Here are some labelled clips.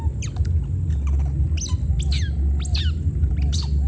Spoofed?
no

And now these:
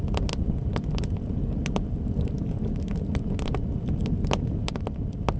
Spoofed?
no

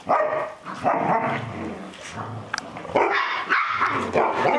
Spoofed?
no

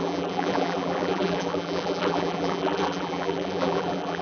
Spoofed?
yes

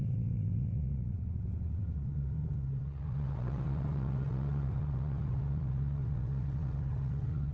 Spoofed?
yes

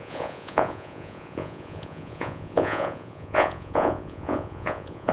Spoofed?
yes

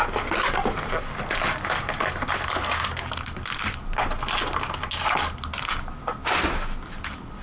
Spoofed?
no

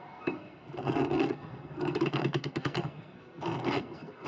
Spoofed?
yes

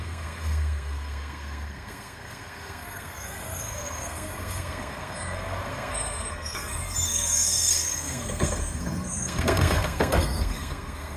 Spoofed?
yes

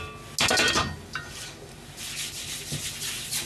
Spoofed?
no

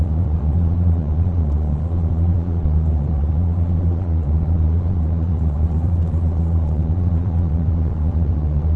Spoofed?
yes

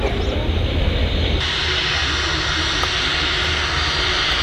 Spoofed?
no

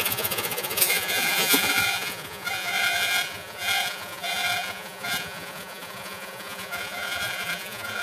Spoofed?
yes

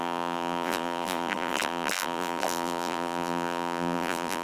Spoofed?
yes